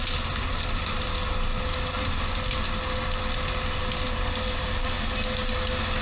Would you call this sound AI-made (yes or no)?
no